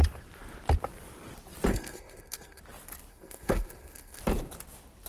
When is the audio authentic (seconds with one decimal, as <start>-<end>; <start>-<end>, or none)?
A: 0.0-1.7; 2.6-3.1; 4.2-5.1